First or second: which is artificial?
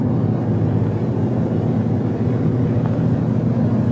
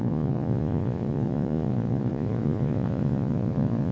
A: second